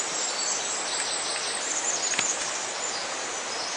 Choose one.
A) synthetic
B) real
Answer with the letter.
B